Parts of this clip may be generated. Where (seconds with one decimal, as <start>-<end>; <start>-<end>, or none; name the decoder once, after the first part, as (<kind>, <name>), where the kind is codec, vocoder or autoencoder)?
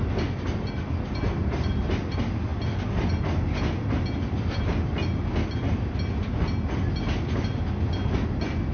none